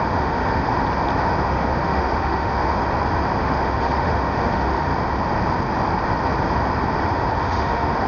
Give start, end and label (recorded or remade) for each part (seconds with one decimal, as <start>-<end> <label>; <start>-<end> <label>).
0.0-0.7 remade; 0.7-1.4 recorded; 1.4-2.8 remade; 2.8-3.4 recorded; 3.4-4.9 remade; 4.9-7.3 recorded; 7.3-8.1 remade